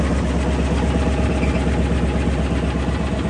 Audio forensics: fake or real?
real